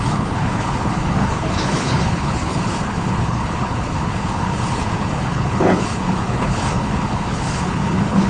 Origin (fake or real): fake